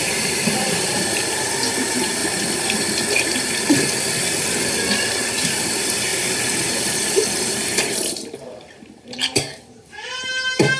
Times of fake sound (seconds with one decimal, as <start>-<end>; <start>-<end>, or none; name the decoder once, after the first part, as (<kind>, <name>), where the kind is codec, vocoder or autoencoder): 0.0-2.2 (vocoder, BigVGAN v2); 5.6-10.8